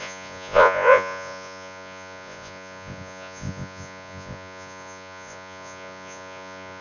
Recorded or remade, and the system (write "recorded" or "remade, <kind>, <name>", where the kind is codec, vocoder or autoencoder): remade, vocoder, Vocos